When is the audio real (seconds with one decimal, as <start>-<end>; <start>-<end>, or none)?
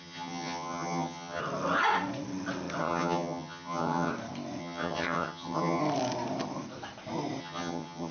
1.4-2.8; 4.1-4.6; 5.8-7.4